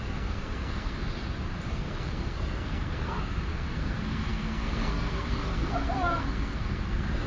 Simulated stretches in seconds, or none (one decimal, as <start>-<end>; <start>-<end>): 0.0-1.0; 1.7-7.3